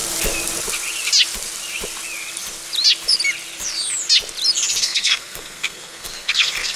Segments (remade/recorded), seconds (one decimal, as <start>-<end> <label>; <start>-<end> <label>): 0.0-4.8 recorded; 4.8-6.8 remade